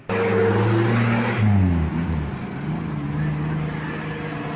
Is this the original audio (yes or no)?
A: yes